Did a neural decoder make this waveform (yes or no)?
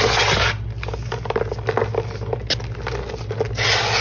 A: no